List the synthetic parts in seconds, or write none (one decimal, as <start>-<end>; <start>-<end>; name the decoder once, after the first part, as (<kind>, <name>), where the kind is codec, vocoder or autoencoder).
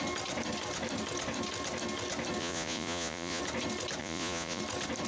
2.4-3.4 (vocoder, Vocos); 4.0-4.6